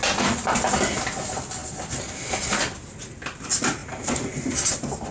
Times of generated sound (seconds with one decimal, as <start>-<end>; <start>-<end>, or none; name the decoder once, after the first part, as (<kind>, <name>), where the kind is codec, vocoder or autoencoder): none